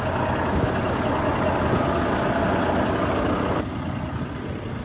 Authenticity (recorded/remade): recorded